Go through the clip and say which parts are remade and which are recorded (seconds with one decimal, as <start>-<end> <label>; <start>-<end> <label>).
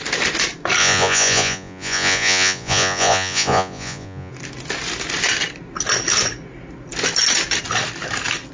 0.0-0.8 recorded; 0.8-4.3 remade; 4.3-8.5 recorded